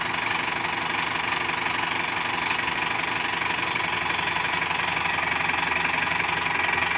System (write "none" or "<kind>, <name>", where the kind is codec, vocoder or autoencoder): none